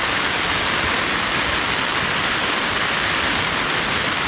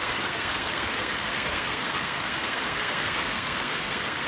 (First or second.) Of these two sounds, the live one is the first